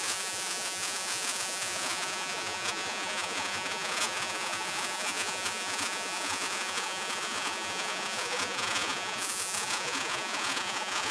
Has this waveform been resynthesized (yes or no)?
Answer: yes